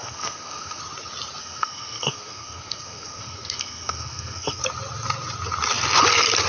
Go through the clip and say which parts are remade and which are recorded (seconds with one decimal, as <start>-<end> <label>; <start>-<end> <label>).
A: 0.0-0.8 remade; 0.8-1.4 recorded; 1.4-4.6 remade; 4.6-6.5 recorded